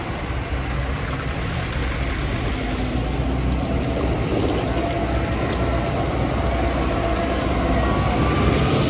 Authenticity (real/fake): real